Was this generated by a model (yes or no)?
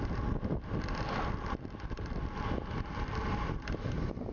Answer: no